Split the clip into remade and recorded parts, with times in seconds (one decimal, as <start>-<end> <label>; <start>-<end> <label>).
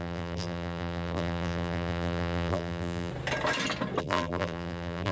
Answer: 0.0-3.1 remade; 3.1-4.0 recorded; 4.0-5.1 remade